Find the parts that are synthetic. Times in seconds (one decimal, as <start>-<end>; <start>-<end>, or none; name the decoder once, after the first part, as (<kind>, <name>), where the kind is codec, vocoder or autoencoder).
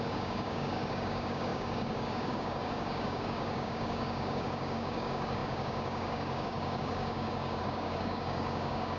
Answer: 0.0-9.0 (codec, DAC)